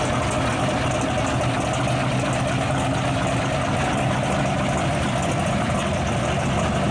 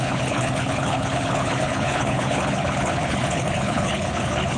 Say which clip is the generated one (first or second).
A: second